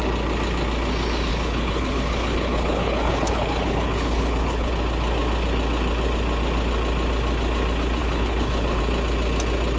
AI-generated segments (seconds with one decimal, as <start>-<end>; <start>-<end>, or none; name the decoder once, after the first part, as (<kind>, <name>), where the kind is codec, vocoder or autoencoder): 1.3-4.7 (codec, HILCodec); 8.0-8.8